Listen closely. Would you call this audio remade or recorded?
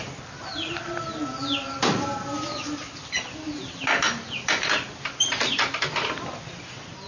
recorded